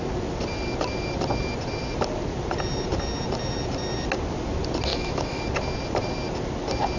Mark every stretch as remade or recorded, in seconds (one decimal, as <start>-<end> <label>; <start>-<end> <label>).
0.0-4.9 recorded; 4.9-5.4 remade; 5.4-7.0 recorded